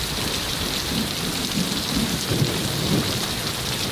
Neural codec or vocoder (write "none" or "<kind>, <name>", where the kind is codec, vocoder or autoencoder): none